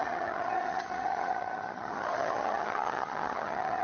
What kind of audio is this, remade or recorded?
remade